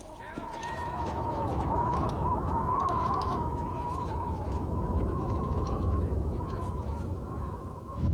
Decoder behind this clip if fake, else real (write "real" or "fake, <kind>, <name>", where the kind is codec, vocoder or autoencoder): fake, autoencoder, DAC-VAE